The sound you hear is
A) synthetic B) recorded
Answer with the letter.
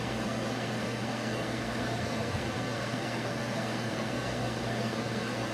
A